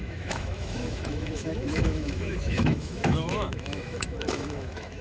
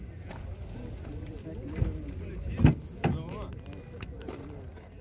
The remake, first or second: first